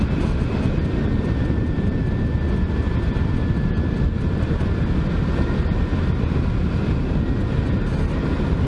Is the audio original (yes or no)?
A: yes